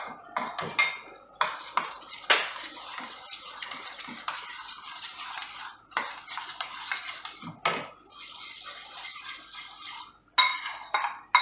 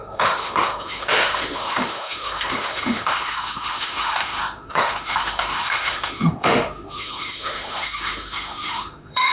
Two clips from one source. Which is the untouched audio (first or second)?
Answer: first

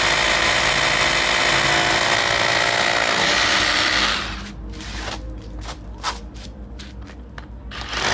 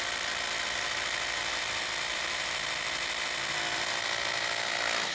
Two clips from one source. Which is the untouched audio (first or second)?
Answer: first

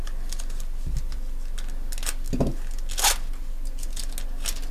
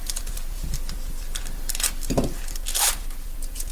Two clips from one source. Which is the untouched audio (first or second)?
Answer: first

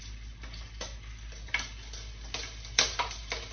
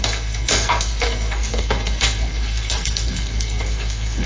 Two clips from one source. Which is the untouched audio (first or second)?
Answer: first